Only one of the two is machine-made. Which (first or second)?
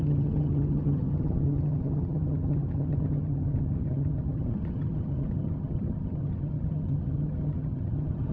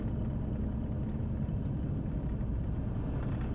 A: first